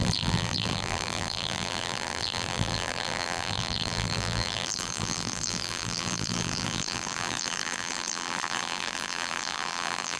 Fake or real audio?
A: fake